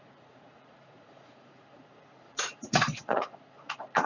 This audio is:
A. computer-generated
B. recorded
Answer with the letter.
A